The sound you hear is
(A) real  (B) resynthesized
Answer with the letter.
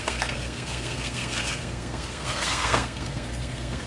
B